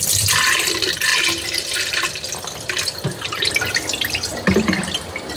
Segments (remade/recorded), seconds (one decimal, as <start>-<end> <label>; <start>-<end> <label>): 0.0-5.4 recorded